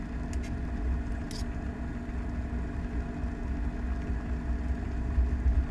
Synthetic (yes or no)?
no